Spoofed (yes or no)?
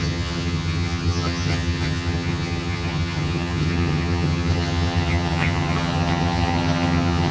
yes